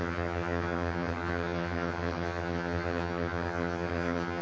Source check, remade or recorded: remade